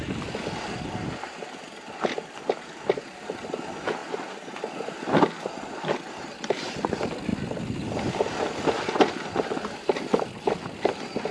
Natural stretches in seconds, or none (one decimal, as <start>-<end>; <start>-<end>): 0.0-11.3